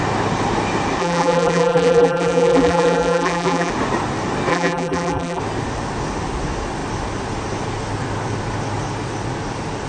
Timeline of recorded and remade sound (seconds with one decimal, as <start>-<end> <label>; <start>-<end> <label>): 0.0-1.0 recorded; 1.0-3.7 remade; 3.7-4.5 recorded; 4.5-5.4 remade; 5.4-9.9 recorded